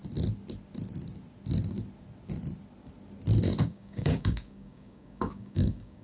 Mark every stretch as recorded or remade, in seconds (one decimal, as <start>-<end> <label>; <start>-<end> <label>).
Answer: 0.0-3.6 recorded; 3.6-6.0 remade